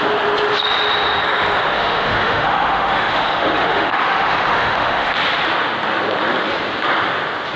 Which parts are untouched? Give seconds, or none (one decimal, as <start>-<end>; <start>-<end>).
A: 0.0-1.7; 5.1-7.6